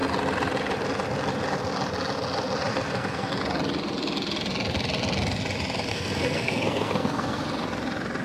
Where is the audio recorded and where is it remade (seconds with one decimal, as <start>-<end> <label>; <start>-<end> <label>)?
0.0-2.7 recorded; 2.7-3.4 remade; 3.4-5.9 recorded; 5.9-7.4 remade; 7.4-8.2 recorded